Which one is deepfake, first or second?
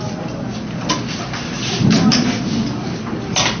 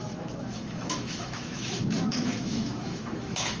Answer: second